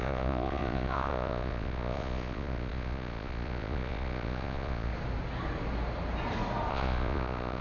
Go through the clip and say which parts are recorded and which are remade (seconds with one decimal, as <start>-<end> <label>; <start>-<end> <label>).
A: 0.0-4.9 remade; 4.9-6.7 recorded; 6.7-7.6 remade